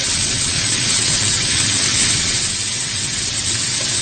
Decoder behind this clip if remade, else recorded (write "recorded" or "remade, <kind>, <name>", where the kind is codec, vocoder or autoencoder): remade, vocoder, WaveNeXt